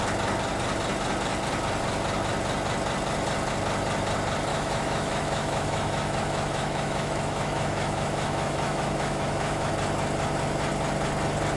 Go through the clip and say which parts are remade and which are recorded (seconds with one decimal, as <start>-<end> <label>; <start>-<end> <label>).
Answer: 0.0-4.5 recorded; 4.5-9.7 remade; 9.7-11.6 recorded